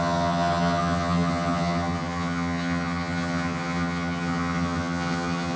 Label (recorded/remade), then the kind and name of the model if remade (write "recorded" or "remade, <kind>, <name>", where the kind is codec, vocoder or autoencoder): remade, vocoder, HiFi-GAN